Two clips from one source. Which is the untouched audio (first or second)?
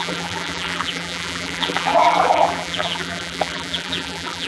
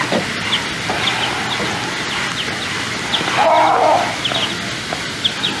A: second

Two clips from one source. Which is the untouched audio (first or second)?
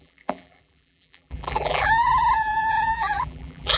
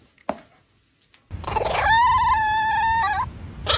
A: second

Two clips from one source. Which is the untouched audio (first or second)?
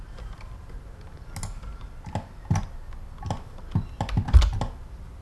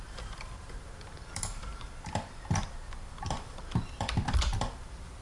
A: first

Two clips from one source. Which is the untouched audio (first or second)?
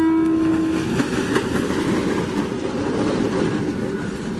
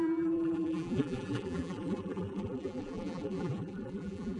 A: first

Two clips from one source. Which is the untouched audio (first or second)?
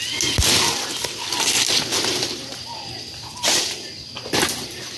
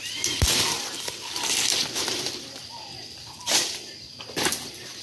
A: first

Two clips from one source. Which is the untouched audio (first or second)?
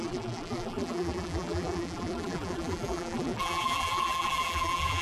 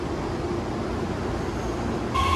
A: second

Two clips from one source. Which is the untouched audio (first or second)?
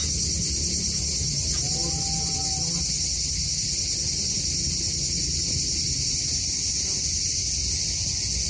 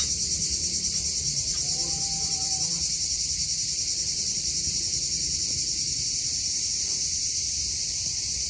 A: first